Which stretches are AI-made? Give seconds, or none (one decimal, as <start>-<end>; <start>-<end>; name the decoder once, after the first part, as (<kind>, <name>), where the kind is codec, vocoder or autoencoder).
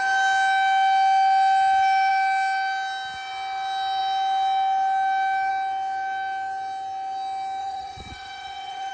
7.6-8.9 (vocoder, Vocos)